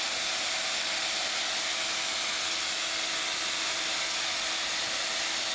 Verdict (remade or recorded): recorded